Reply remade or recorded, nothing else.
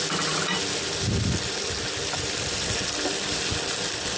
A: recorded